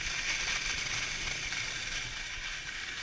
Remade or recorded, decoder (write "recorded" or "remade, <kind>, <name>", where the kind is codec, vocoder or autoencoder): recorded